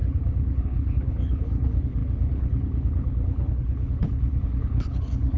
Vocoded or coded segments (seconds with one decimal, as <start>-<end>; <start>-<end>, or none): 0.0-5.4